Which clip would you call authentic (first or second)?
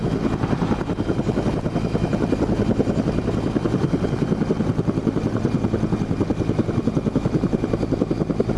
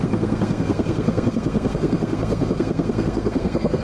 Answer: first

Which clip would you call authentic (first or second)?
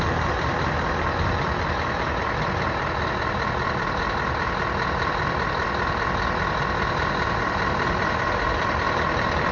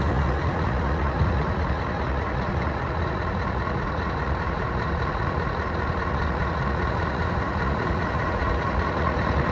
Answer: first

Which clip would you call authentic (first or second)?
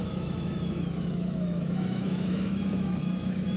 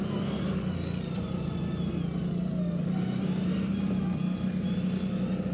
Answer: second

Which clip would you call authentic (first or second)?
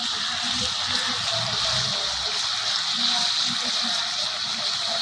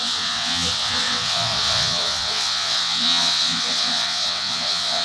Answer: first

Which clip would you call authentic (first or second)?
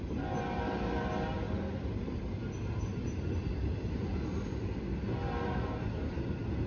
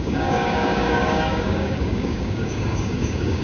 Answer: first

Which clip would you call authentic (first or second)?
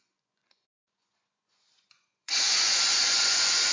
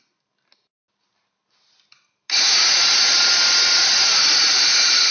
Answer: second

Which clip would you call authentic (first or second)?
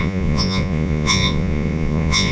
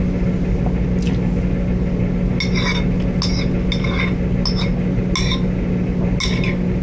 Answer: second